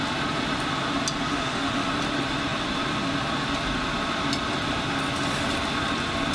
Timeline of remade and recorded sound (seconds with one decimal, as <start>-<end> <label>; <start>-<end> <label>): 0.0-1.3 recorded; 1.3-1.9 remade; 1.9-6.3 recorded